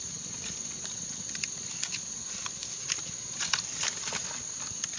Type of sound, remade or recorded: recorded